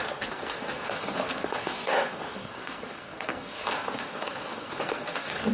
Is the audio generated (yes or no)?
yes